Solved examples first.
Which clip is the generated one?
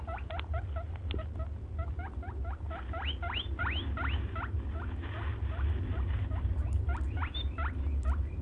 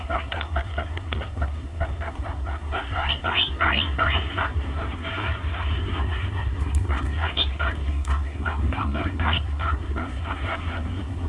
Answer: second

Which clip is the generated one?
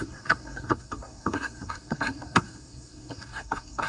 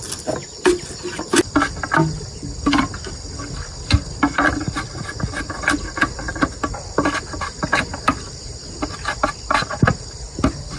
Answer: first